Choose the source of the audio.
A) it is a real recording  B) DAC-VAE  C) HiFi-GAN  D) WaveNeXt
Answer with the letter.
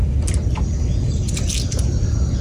A